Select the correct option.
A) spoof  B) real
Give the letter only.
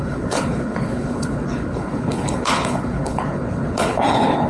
A